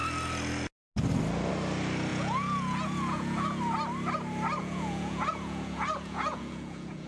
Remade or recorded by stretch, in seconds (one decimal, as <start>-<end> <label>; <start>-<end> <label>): 0.0-2.1 recorded; 2.1-3.6 remade; 3.6-4.6 recorded; 4.6-7.1 remade